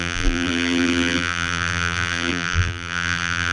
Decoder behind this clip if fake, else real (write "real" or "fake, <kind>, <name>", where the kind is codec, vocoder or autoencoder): fake, vocoder, BigVGAN v2